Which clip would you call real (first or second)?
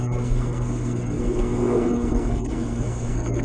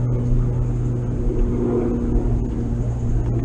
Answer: second